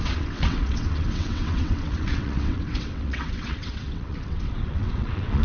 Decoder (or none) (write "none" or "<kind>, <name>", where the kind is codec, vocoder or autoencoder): vocoder, WaveNeXt